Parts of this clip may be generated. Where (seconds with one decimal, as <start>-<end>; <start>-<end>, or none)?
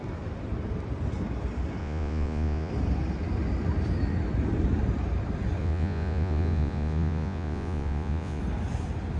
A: 1.8-2.7; 5.6-8.4